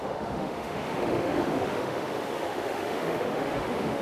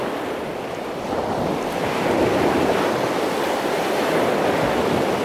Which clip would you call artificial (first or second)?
first